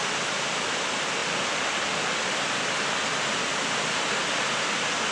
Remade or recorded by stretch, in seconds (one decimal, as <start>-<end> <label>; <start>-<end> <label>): 0.0-5.1 recorded